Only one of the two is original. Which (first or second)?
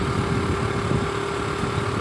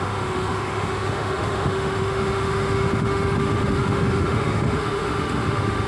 first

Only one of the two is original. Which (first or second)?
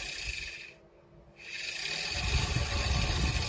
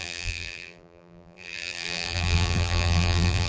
first